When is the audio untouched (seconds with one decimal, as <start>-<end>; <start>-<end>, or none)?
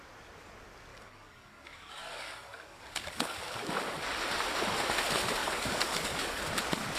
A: 0.0-0.9; 3.7-5.4; 6.4-7.0